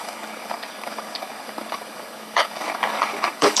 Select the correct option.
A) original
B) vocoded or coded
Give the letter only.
B